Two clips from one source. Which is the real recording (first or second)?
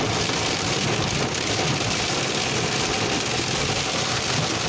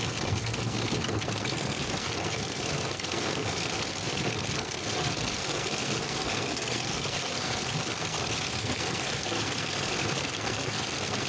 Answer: first